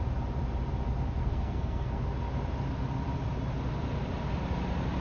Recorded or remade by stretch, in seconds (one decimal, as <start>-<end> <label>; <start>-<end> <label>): 0.0-1.2 recorded; 1.2-2.0 remade; 2.0-5.0 recorded